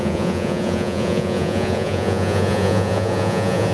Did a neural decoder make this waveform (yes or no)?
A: yes